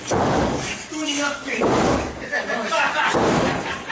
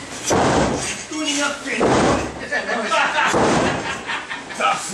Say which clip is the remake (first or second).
first